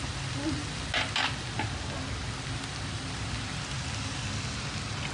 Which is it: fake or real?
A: real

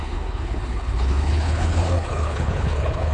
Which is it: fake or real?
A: fake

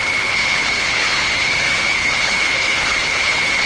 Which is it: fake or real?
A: fake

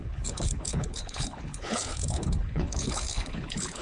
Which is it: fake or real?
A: fake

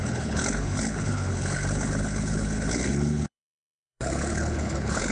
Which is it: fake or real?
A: fake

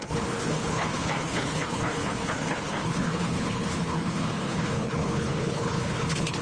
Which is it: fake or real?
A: fake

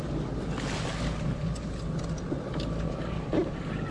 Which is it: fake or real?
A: real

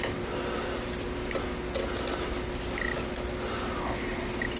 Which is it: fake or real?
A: real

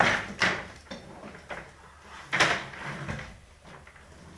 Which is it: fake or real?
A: real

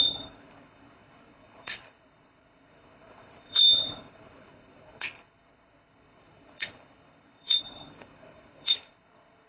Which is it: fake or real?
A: fake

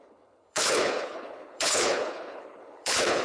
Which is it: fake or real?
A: fake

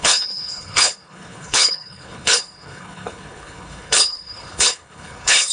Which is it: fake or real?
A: fake